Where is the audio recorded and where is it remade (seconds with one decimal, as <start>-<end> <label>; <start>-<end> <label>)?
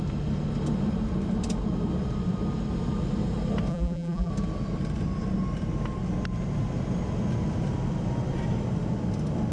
0.0-3.7 recorded; 3.7-4.3 remade; 4.3-9.5 recorded